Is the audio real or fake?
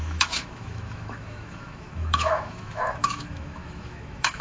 fake